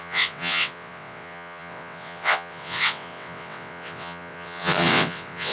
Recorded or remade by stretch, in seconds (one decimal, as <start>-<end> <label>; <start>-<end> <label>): 0.0-5.5 remade